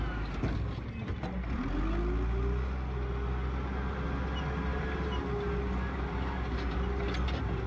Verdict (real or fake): real